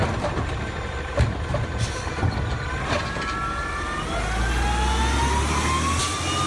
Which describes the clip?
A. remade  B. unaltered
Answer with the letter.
B